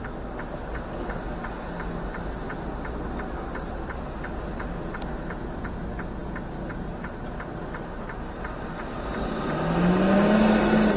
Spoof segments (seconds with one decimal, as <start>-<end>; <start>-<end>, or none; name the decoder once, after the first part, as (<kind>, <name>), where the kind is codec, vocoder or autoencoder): none